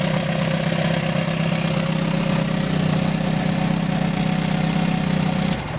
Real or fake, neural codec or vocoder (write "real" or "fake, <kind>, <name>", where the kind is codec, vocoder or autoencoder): real